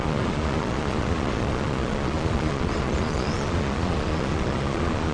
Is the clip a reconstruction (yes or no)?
yes